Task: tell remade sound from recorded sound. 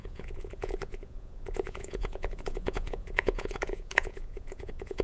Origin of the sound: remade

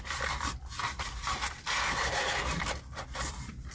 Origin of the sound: recorded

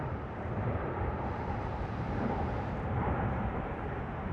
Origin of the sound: remade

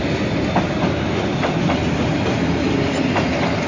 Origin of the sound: recorded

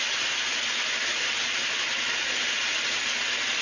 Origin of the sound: recorded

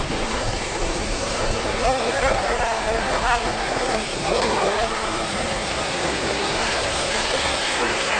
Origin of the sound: remade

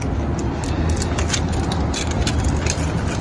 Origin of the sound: recorded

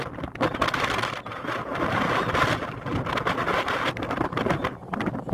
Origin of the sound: recorded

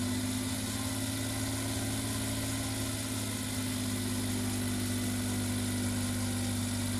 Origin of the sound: recorded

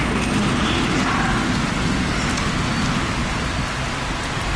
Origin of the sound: recorded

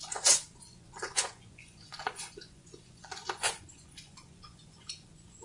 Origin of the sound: remade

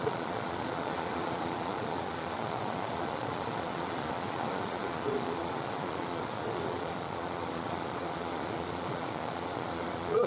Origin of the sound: remade